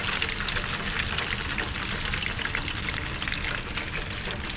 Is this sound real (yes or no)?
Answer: yes